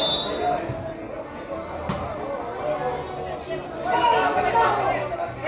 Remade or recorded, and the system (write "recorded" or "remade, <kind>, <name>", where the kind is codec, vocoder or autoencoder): recorded